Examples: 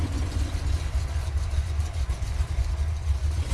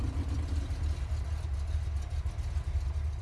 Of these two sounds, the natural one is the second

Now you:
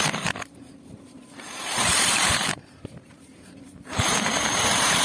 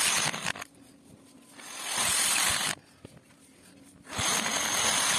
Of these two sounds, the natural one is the second